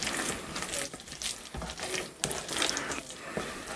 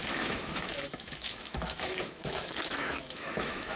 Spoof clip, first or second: second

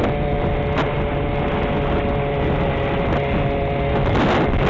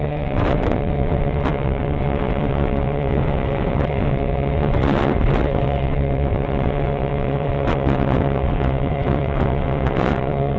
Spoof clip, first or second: second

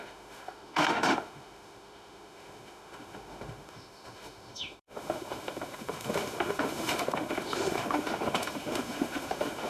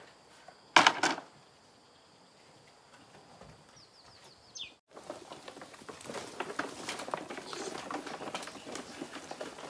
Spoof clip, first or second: first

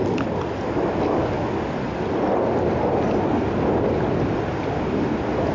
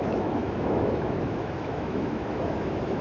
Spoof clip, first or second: second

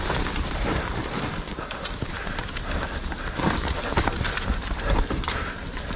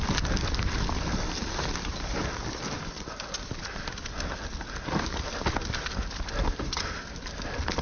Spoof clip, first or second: first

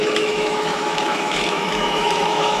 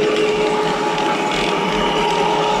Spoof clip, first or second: first